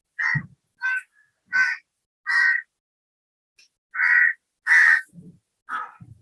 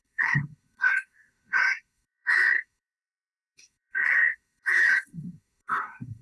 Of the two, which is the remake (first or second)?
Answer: second